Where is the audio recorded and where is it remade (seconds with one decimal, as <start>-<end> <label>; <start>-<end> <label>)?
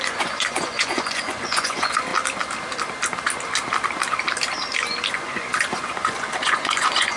0.0-2.1 remade; 2.1-5.1 recorded; 5.1-7.2 remade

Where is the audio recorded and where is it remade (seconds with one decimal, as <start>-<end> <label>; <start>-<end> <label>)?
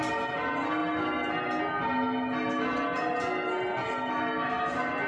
0.0-5.1 recorded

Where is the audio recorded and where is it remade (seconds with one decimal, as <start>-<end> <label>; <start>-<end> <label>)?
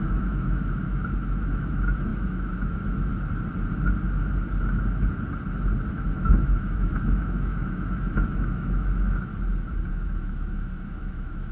0.0-3.1 remade; 3.1-5.9 recorded; 5.9-9.3 remade; 9.3-9.9 recorded; 9.9-11.5 remade